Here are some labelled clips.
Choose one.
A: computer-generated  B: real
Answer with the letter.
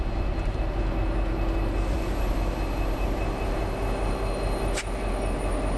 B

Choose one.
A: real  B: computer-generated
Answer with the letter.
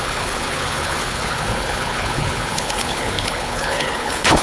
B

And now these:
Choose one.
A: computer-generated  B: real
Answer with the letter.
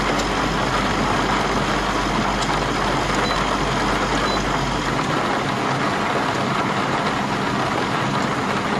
B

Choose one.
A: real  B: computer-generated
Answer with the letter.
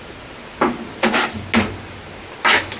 A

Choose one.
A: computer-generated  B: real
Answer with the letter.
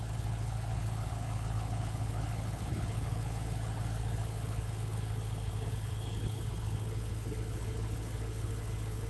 A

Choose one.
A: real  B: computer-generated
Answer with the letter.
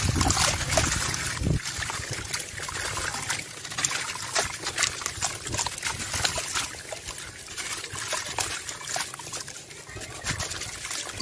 A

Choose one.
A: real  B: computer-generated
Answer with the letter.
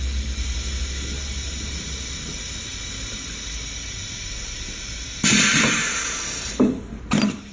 A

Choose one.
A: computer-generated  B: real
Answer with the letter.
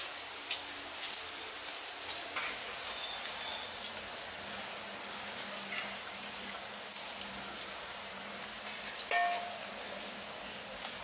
B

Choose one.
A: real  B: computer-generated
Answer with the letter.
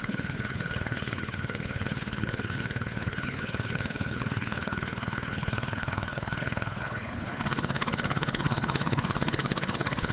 B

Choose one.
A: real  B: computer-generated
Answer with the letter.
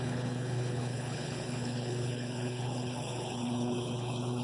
B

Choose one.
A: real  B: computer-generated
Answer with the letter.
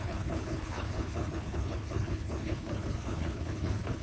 B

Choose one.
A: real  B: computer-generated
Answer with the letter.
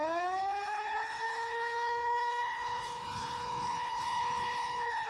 B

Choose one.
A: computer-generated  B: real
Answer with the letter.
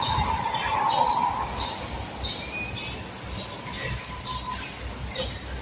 B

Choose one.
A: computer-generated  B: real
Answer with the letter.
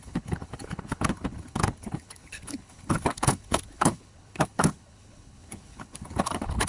A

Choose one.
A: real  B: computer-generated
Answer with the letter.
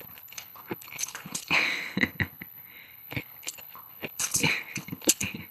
B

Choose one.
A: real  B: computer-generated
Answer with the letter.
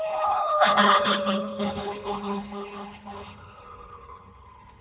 B